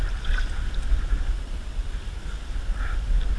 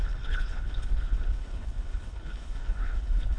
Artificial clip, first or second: second